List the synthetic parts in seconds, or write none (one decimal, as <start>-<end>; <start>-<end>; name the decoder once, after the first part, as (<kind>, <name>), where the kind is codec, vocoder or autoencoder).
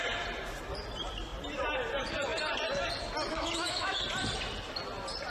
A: 3.3-4.0 (autoencoder, DAC-VAE)